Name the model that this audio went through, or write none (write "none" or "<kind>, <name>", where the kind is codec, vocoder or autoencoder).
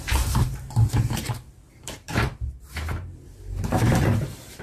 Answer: vocoder, BigVGAN v2